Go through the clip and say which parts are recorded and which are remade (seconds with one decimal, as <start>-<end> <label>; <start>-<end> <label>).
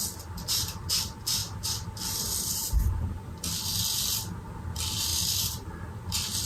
0.0-1.4 recorded; 1.4-2.5 remade; 2.5-5.1 recorded; 5.1-5.7 remade; 5.7-6.5 recorded